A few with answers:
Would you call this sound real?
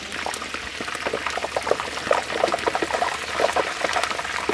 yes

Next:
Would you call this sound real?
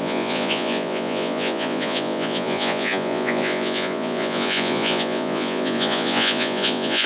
no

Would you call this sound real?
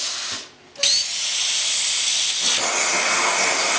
yes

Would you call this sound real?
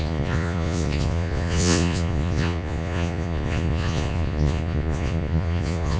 no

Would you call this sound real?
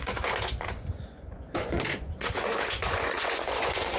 no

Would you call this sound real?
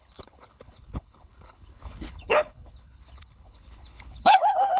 no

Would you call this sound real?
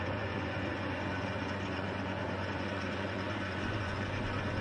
no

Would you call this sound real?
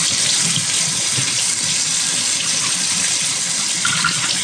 yes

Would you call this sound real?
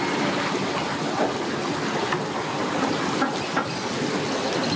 yes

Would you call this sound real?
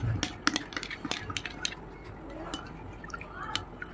yes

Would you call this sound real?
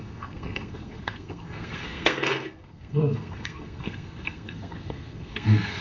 no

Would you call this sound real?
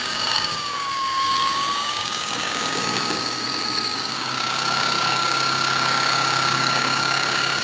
no